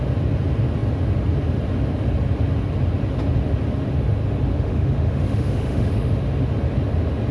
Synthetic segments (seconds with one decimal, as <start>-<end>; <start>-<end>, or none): 4.5-6.1